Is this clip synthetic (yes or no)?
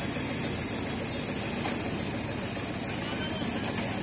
no